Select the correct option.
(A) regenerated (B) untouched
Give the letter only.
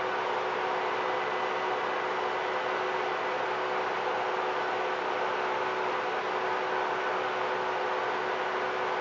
B